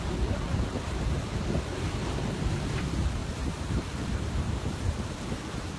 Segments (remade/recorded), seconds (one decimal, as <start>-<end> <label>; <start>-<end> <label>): 0.0-1.7 recorded; 1.7-2.8 remade; 2.8-3.2 recorded; 3.2-5.2 remade; 5.2-5.8 recorded